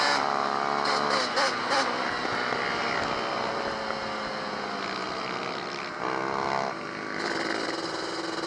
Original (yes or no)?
yes